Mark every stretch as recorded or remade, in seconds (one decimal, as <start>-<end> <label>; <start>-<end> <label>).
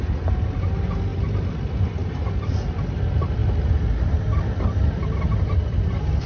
0.0-6.3 recorded